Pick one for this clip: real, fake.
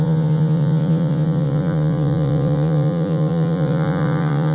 fake